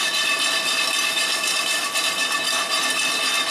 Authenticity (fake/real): real